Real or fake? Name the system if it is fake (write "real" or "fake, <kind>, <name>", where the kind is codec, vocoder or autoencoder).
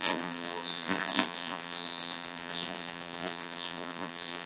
fake, vocoder, BigVGAN v2